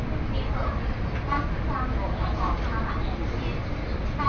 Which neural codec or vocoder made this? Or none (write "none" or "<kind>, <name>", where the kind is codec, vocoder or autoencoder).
none